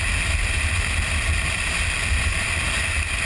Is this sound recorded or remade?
recorded